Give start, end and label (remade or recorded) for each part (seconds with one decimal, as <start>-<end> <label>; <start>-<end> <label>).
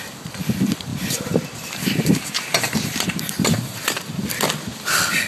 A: 0.0-0.9 recorded; 0.9-4.1 remade; 4.1-5.3 recorded